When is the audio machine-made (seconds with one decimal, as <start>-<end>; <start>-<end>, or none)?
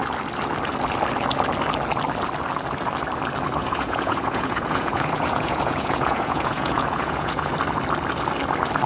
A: 3.6-7.5